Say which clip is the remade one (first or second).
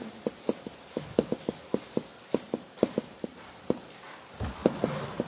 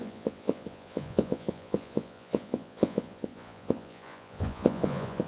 second